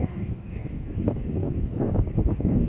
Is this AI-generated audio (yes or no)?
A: yes